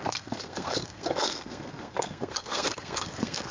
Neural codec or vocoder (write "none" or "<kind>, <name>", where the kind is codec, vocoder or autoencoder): codec, SNAC